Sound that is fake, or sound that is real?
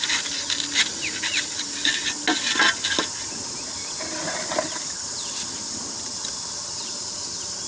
real